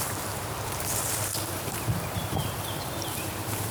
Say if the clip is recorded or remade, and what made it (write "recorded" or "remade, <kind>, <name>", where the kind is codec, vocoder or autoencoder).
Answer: remade, vocoder, BigVGAN v2